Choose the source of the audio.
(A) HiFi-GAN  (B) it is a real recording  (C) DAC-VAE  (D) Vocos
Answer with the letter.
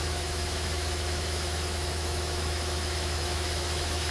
C